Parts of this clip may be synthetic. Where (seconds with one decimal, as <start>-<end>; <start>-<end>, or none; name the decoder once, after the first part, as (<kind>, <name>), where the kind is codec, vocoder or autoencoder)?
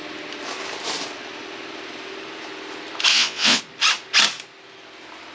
3.1-3.6 (vocoder, WaveNeXt)